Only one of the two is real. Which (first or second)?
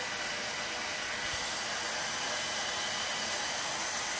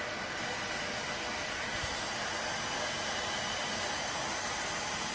first